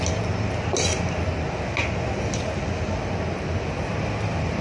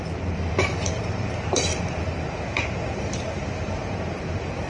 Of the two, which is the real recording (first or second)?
first